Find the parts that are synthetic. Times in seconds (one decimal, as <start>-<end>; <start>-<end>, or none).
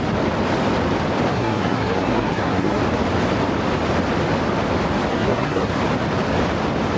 1.3-2.8; 5.1-5.7